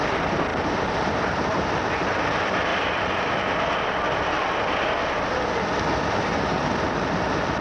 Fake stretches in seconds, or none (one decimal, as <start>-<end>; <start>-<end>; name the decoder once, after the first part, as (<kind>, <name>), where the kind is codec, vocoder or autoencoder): 0.5-1.7 (vocoder, BigVGAN v2); 2.7-3.3